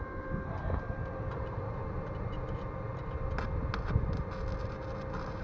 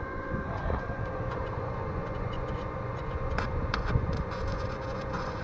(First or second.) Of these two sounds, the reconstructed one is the second